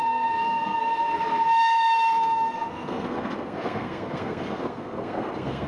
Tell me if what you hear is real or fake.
fake